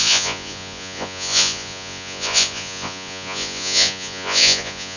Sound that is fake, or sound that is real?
fake